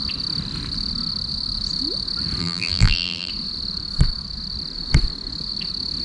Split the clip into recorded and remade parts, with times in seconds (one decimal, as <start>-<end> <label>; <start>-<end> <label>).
0.0-2.4 recorded; 2.4-3.3 remade; 3.3-6.0 recorded